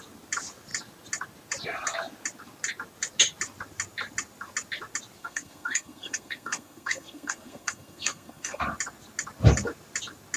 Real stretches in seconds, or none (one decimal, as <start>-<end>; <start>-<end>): 0.0-5.2; 8.6-10.4